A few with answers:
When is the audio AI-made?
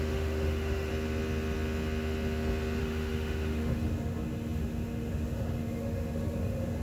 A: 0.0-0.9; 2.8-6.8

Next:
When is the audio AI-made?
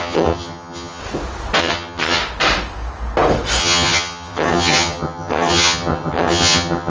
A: 0.0-1.0; 1.6-2.2; 3.6-6.9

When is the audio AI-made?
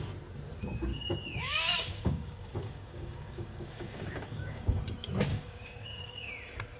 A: 0.9-4.8; 5.3-6.3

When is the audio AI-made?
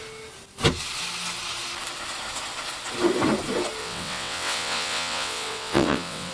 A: 3.8-6.3